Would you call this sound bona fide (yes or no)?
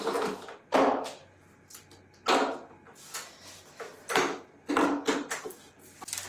yes